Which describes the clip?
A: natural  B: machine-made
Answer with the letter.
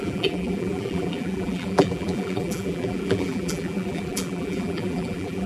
B